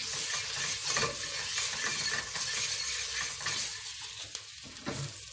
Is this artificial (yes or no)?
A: no